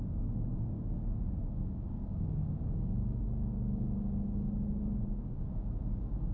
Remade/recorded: remade